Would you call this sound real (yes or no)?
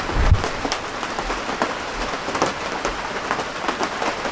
yes